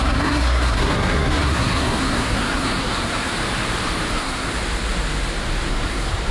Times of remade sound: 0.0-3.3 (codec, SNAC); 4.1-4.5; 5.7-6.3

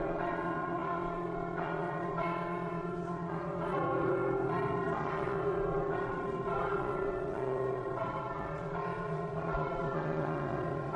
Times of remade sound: 0.0-11.0 (vocoder, Vocos)

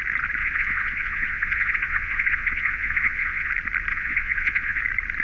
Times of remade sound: 0.4-3.5 (vocoder, Vocos); 3.9-4.8

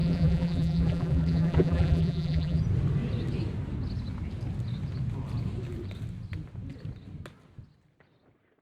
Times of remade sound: 0.0-2.6 (vocoder, BigVGAN v2)

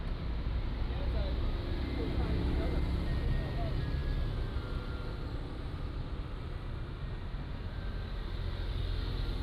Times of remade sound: none

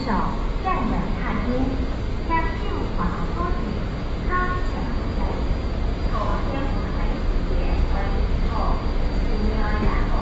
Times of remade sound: none

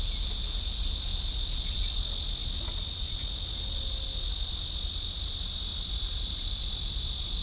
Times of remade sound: none